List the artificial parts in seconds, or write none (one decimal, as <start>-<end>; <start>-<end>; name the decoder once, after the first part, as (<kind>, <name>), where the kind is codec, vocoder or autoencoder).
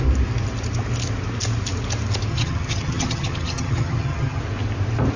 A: 2.3-4.4 (vocoder, HiFi-GAN)